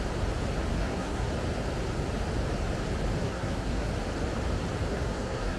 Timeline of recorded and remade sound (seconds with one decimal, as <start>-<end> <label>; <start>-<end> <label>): 0.0-0.7 recorded; 0.7-1.3 remade; 1.3-3.2 recorded; 3.2-3.9 remade; 3.9-4.9 recorded; 4.9-5.6 remade